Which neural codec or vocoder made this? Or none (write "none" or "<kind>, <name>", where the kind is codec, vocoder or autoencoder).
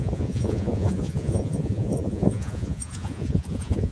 vocoder, Vocos